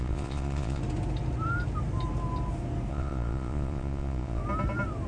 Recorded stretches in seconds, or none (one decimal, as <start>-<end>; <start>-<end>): 0.8-2.9; 4.4-5.1